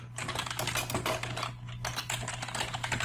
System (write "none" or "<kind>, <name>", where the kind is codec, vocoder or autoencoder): none